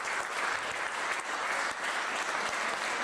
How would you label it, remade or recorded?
recorded